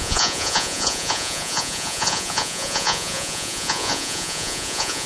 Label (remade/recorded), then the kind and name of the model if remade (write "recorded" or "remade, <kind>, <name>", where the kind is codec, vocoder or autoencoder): remade, vocoder, Vocos